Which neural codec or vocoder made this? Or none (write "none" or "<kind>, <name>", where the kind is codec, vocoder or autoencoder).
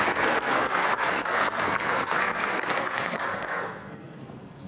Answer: codec, SNAC